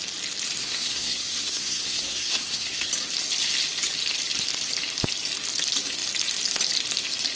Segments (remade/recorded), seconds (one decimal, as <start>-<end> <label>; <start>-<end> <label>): 0.0-0.6 recorded; 0.6-2.9 remade; 2.9-7.4 recorded